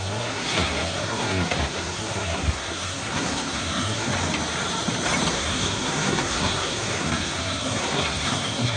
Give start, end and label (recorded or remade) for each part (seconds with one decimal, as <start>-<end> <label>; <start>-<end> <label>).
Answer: 0.0-4.1 remade; 4.1-5.3 recorded; 5.3-8.8 remade